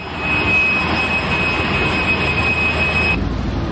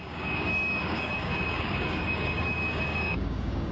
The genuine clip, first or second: first